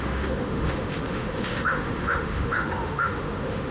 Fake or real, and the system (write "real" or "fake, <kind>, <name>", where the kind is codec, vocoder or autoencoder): fake, autoencoder, DAC-VAE